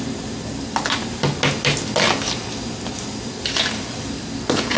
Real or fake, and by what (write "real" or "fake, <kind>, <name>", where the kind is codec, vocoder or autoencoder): real